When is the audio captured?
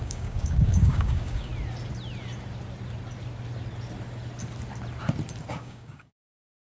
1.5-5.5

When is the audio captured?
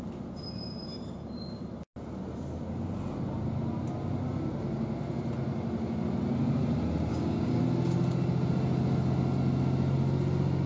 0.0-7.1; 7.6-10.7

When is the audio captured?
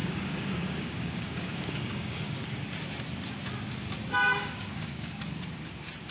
2.5-4.3; 5.2-6.1